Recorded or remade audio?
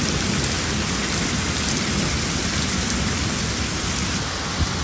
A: recorded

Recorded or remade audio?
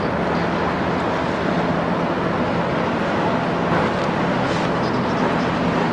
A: recorded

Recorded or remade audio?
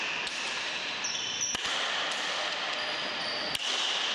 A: recorded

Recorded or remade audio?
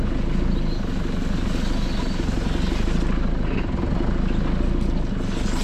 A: recorded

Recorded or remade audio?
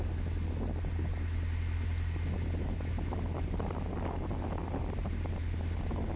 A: recorded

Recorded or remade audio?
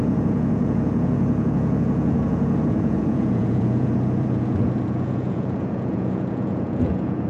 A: remade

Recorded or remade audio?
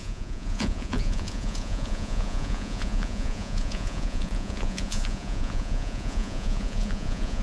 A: remade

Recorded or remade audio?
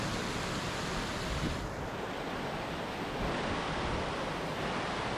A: recorded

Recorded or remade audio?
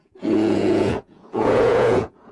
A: remade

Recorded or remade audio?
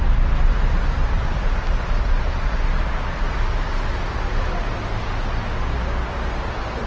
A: recorded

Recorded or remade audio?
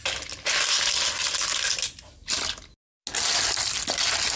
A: recorded